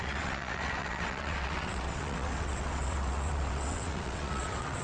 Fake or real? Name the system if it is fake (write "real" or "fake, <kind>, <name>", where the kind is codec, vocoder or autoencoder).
fake, vocoder, WaveNeXt